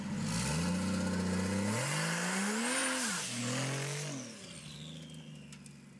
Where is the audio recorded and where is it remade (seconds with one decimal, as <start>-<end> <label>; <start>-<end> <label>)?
0.0-6.0 recorded